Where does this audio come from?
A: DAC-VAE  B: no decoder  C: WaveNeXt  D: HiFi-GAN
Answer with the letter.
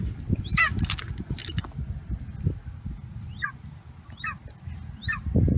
B